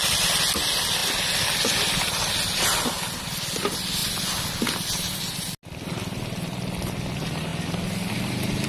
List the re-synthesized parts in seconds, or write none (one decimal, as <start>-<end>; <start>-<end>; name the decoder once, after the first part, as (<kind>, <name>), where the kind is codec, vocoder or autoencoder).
none